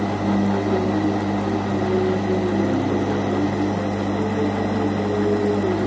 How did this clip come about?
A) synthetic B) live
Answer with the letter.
B